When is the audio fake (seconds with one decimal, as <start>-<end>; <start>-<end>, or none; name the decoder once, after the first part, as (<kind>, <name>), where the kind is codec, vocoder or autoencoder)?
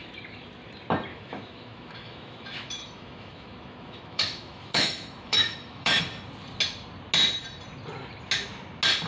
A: 1.1-6.0 (autoencoder, DAC-VAE)